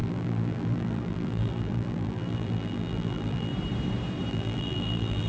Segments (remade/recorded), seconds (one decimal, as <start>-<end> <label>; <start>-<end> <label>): 0.0-3.5 remade; 3.5-4.3 recorded; 4.3-5.3 remade